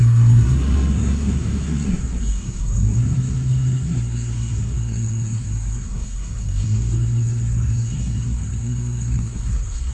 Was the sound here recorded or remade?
remade